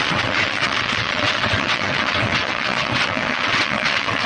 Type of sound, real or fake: fake